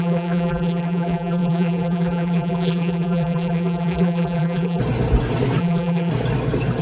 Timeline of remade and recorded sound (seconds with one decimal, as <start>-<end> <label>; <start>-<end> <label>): 0.0-4.8 remade; 4.8-5.6 recorded; 5.6-6.1 remade; 6.1-6.8 recorded